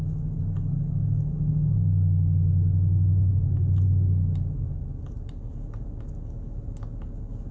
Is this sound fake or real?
real